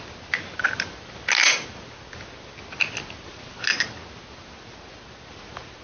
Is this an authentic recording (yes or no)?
yes